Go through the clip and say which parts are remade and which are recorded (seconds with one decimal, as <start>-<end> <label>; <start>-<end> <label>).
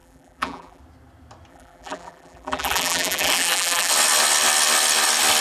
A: 0.0-0.8 remade; 0.8-1.5 recorded; 1.5-3.9 remade; 3.9-5.4 recorded